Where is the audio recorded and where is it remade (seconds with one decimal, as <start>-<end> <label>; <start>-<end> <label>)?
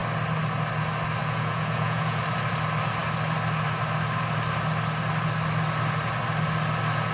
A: 0.0-1.2 recorded; 1.2-2.2 remade; 2.2-7.1 recorded